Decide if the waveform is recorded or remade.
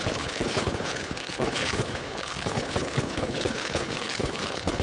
remade